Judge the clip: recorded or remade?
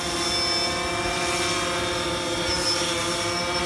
recorded